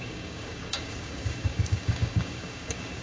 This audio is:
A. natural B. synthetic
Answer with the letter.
B